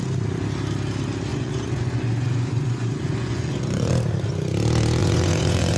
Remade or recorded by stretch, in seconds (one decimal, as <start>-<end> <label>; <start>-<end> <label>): 0.0-1.3 recorded; 1.3-3.9 remade; 3.9-5.0 recorded; 5.0-5.8 remade